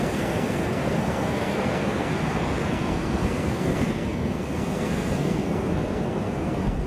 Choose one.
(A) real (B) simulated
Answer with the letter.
B